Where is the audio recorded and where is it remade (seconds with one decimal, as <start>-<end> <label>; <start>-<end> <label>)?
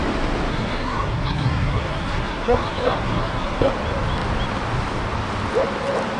0.0-0.5 recorded; 0.5-3.7 remade; 3.7-6.2 recorded